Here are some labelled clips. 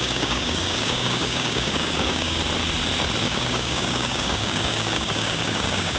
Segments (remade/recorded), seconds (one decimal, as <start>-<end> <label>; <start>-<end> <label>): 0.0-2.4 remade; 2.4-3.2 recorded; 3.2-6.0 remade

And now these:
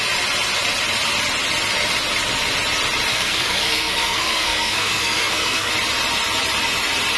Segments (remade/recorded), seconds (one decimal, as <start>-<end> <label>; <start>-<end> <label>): 0.0-3.1 recorded; 3.1-5.7 remade; 5.7-7.2 recorded

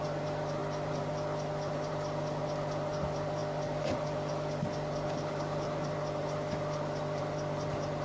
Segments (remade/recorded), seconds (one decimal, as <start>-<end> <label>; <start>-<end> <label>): 0.0-8.0 recorded

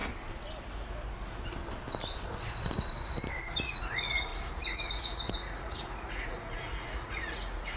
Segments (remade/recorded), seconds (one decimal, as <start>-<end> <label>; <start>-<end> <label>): 0.0-3.6 recorded; 3.6-4.3 remade; 4.3-4.9 recorded; 4.9-7.8 remade